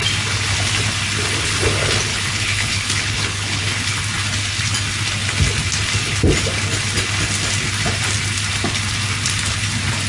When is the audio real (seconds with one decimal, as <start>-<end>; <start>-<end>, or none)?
0.0-2.1; 4.0-10.1